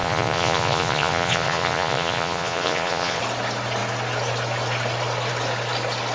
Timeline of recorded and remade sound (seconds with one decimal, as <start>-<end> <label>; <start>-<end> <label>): 0.0-3.2 remade; 3.2-6.1 recorded

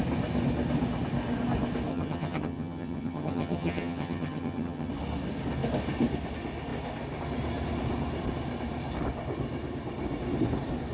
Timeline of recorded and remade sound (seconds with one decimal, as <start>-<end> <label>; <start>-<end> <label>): 0.0-1.9 recorded; 1.9-4.9 remade; 4.9-10.9 recorded